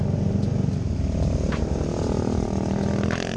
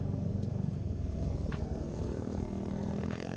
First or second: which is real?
first